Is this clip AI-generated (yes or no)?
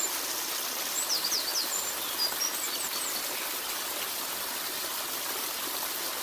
no